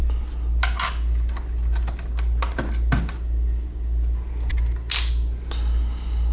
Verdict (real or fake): real